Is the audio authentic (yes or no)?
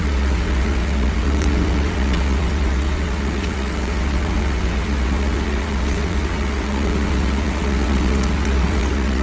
no